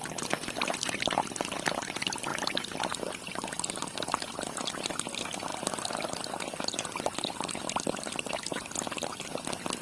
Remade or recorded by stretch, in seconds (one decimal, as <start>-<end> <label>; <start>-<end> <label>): 0.0-9.8 recorded